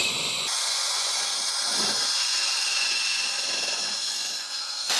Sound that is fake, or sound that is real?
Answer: fake